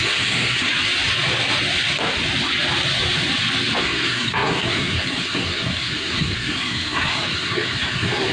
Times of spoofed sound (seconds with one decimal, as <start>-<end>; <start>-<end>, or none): 0.0-0.7; 3.8-8.3